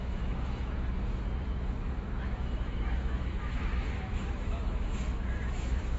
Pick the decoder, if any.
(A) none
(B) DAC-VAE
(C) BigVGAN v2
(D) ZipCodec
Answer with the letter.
B